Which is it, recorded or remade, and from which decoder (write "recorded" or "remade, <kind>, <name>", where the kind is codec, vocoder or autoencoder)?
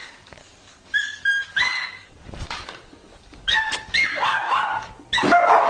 remade, codec, DAC